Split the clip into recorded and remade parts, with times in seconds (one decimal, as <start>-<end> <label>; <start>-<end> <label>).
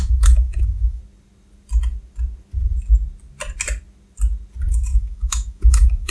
0.0-1.0 remade; 1.0-4.7 recorded; 4.7-6.1 remade